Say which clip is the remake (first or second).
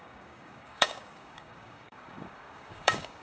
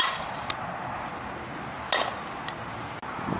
first